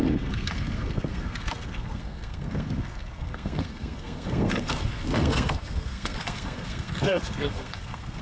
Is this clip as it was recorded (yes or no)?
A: no